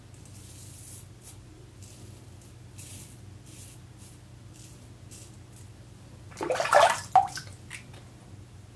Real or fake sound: real